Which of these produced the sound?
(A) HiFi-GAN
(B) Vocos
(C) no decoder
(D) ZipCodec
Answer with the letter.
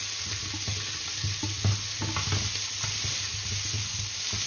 C